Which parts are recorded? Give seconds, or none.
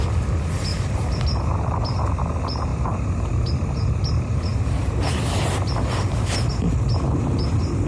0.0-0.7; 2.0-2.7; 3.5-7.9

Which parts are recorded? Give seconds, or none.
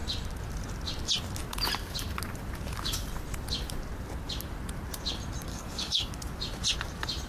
0.0-5.5; 6.1-7.3